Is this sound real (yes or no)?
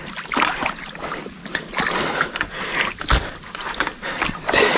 yes